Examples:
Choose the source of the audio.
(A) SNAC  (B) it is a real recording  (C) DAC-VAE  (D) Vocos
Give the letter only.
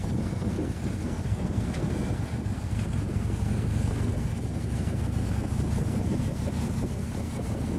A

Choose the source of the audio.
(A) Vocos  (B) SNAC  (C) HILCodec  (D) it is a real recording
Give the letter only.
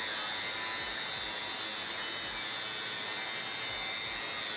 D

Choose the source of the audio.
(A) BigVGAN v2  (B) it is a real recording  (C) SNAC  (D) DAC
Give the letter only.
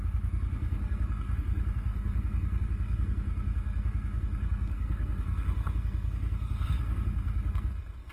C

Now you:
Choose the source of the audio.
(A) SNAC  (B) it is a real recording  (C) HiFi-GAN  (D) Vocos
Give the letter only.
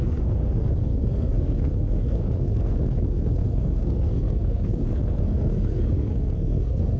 A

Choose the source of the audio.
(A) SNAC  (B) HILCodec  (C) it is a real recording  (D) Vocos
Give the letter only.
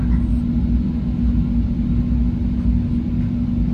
C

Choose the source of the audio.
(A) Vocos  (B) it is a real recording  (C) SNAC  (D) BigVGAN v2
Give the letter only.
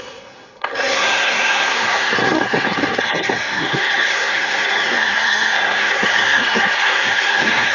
C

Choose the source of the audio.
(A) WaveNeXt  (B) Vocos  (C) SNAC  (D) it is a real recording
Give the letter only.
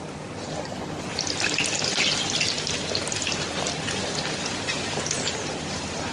D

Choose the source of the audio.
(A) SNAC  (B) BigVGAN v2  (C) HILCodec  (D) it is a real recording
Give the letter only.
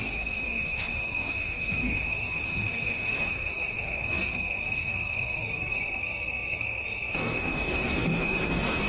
A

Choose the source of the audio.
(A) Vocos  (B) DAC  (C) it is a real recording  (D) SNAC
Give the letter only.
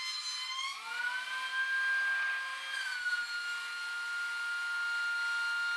C